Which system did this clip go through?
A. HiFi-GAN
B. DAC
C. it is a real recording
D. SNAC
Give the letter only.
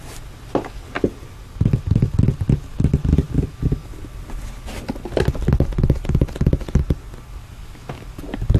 C